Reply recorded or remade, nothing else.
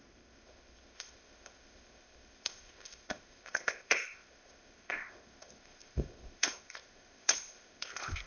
remade